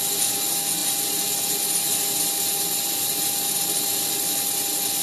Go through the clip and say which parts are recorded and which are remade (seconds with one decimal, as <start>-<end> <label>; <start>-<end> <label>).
0.0-5.0 recorded